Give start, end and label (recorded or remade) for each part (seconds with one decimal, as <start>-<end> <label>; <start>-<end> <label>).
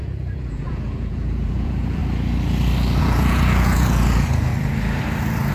0.0-2.0 remade; 2.0-3.0 recorded; 3.0-4.5 remade; 4.5-5.5 recorded